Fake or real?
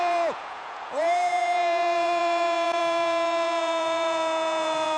fake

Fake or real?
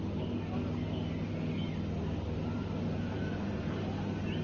real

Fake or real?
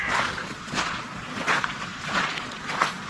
fake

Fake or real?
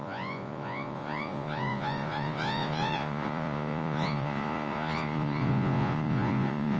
fake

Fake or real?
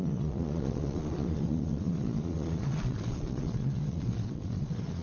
fake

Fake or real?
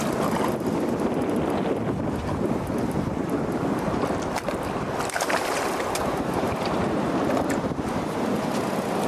real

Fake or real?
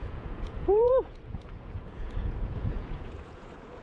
fake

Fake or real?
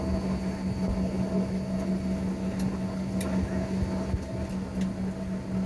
real